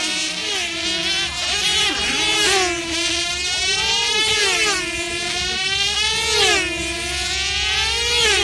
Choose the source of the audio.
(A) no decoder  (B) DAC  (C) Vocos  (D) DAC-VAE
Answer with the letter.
A